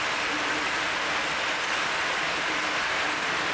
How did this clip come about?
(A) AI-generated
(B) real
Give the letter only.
B